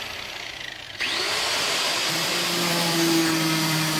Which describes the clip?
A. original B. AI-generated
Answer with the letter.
B